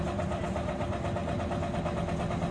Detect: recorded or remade recorded